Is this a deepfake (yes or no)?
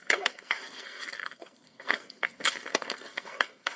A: yes